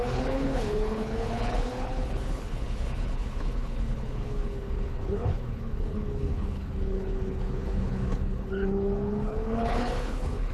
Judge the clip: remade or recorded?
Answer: remade